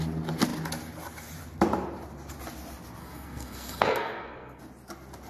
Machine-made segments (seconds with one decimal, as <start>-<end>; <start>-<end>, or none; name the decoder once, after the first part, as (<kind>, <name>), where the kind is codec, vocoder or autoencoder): 3.0-4.6 (codec, SNAC)